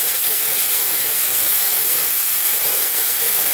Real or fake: fake